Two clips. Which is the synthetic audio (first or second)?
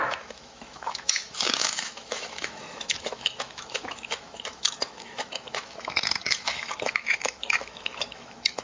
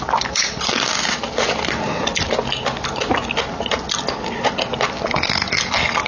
first